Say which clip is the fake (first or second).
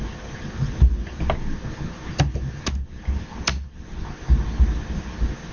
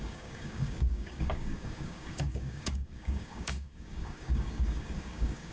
second